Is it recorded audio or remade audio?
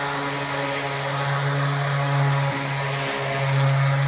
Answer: recorded